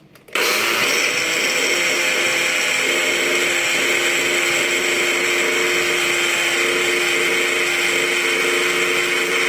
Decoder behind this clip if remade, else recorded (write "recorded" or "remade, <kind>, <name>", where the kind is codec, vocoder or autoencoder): recorded